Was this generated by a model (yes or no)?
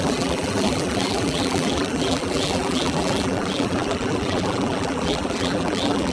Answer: yes